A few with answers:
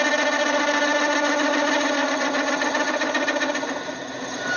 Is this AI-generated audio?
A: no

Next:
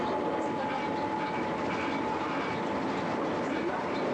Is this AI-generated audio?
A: no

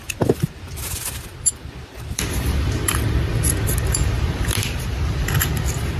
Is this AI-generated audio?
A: yes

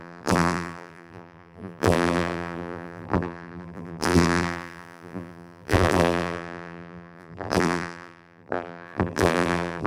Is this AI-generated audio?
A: yes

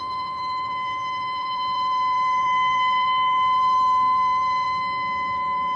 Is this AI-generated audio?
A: yes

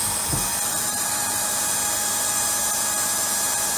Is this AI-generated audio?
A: yes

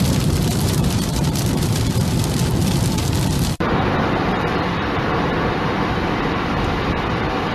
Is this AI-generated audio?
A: yes